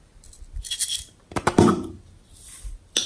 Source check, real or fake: real